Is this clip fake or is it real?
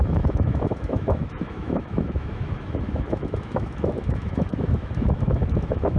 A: fake